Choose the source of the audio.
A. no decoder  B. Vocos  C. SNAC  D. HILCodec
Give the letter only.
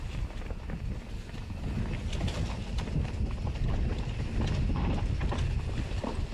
A